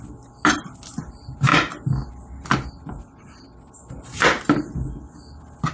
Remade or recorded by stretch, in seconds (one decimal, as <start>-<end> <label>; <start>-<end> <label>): 0.0-5.7 recorded

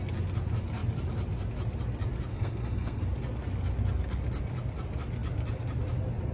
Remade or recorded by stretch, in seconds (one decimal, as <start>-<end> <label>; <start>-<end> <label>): 0.0-2.3 recorded; 2.3-3.0 remade; 3.0-6.3 recorded

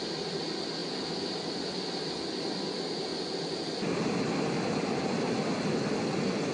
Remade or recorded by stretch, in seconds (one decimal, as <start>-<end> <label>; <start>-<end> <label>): 0.0-6.5 recorded